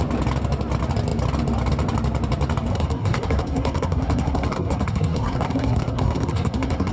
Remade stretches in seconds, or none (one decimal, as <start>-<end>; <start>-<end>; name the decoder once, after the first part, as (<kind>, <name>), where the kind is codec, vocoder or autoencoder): 2.7-6.9 (codec, SNAC)